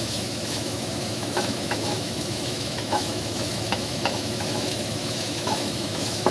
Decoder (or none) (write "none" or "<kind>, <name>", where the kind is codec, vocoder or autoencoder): autoencoder, DAC-VAE